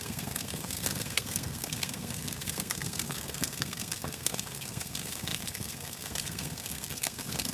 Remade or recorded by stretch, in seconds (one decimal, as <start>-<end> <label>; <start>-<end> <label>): 0.0-7.5 remade